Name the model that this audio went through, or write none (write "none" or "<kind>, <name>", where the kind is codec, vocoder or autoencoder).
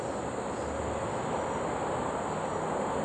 none